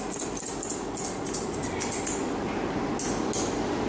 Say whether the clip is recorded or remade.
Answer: recorded